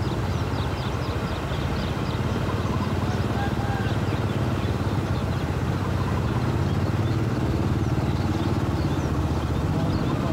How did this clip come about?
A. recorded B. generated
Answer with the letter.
A